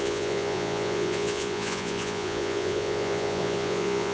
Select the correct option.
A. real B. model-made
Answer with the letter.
B